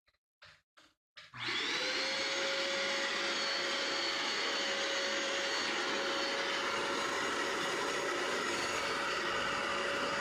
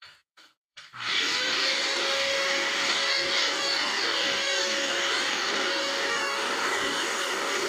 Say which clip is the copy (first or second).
second